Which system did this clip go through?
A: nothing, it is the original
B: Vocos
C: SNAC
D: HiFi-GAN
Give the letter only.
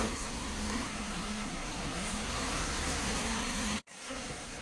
C